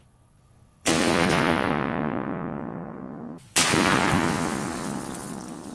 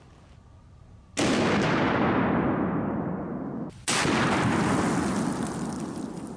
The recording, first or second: second